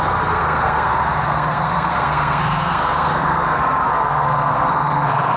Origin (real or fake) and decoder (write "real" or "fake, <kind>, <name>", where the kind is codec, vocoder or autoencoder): fake, codec, SNAC